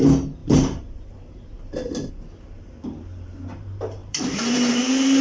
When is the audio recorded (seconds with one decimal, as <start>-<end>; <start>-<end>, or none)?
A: 0.0-0.4; 2.1-4.0; 4.7-5.2

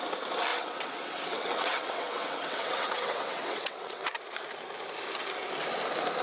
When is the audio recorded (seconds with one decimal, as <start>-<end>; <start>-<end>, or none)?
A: 0.0-0.5; 4.2-6.2

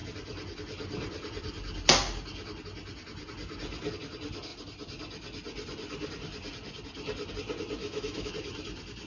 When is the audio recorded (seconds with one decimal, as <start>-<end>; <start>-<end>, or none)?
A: 0.0-7.8; 8.3-9.1

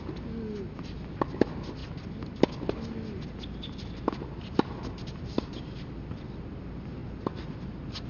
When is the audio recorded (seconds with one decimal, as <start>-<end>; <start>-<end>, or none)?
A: 0.0-8.1

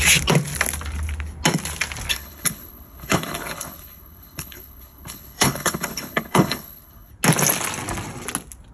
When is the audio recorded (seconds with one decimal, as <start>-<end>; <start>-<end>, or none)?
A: 0.0-2.1; 7.1-8.7

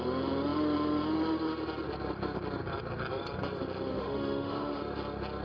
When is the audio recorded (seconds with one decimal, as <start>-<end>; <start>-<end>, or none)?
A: 0.0-3.9; 4.8-5.4

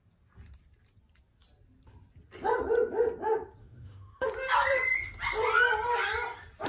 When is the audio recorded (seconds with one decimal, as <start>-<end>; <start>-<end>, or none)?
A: 0.0-3.6; 4.3-6.7

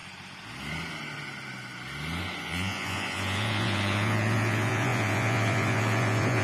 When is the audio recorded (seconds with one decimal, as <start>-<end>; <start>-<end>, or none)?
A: 0.0-2.4